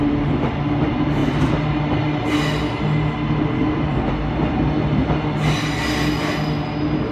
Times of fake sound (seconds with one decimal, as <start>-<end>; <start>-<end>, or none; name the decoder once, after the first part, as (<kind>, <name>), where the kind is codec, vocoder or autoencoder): none